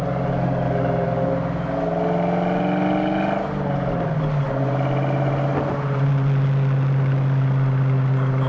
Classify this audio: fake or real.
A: real